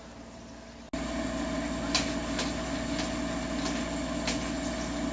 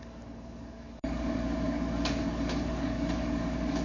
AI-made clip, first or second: second